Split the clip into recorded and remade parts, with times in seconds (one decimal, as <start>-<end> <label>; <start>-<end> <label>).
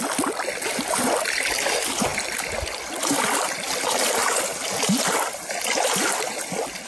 0.0-4.2 remade; 4.2-6.2 recorded; 6.2-6.9 remade